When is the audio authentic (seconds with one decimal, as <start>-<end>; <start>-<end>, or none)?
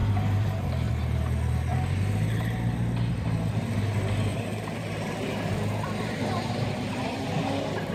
0.9-4.3; 7.2-7.9